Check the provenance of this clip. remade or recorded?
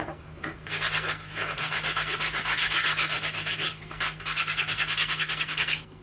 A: remade